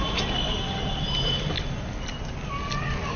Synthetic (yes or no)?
no